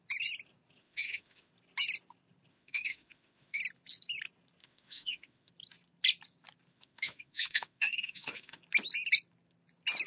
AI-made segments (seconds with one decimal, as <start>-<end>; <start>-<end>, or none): 0.8-1.5; 2.5-3.6; 4.6-5.5; 6.7-8.6